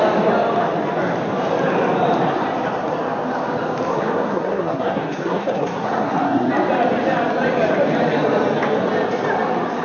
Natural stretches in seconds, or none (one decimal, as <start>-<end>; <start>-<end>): 0.0-3.9; 6.5-9.8